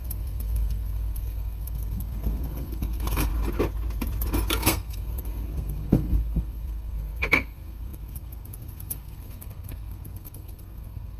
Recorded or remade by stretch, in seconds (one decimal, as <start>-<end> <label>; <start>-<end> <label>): 0.0-3.3 remade; 3.3-4.5 recorded; 4.5-11.2 remade